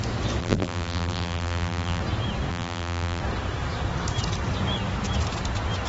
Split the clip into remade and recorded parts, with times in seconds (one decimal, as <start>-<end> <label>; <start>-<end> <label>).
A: 0.0-0.4 recorded; 0.4-2.0 remade; 2.0-2.5 recorded; 2.5-3.2 remade; 3.2-5.9 recorded